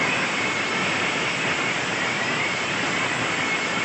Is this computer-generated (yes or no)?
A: no